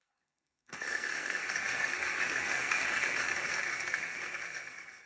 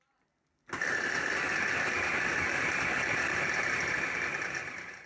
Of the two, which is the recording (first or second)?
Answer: second